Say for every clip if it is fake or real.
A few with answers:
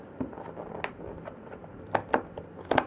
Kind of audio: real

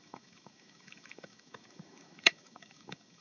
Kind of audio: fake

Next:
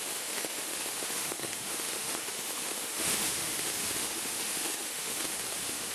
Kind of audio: fake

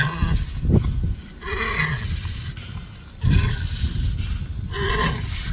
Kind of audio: real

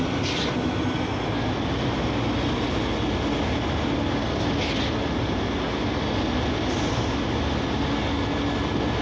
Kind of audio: real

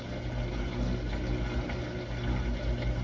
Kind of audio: real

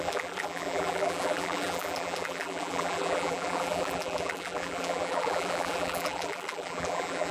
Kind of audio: fake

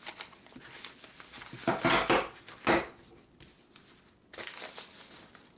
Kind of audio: real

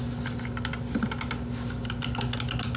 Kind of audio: real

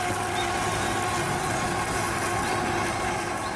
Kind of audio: real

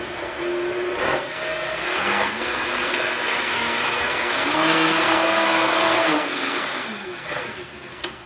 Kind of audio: fake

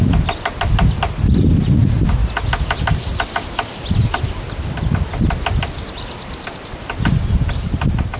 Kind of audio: real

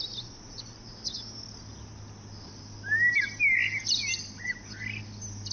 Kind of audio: real